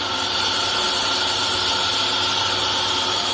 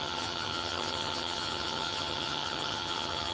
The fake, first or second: second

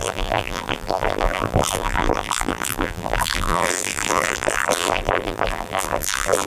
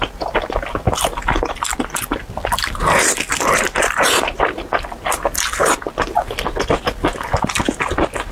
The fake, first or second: first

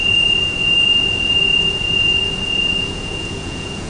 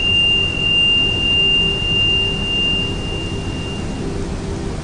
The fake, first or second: first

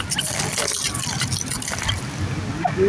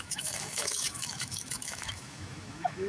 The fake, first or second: second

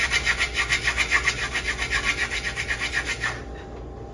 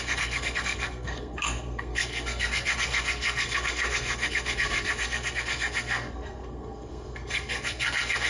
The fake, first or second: second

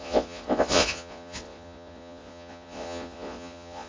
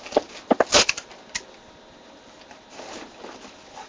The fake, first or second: first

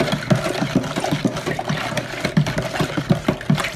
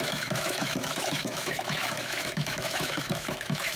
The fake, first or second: second